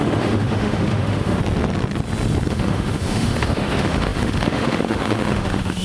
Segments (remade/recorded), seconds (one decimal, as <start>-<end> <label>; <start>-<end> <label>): 0.0-1.4 remade; 1.4-2.5 recorded; 2.5-5.8 remade